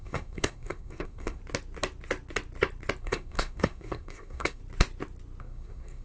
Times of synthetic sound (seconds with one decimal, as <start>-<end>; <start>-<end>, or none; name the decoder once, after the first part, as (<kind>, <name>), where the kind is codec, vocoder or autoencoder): 0.0-1.4 (codec, SNAC); 3.0-4.6; 5.4-6.0